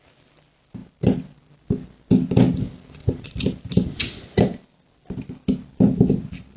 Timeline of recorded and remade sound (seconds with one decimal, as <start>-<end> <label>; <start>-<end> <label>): 0.0-6.6 recorded